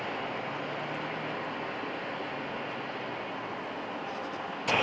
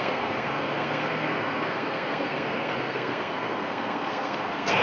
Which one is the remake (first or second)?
second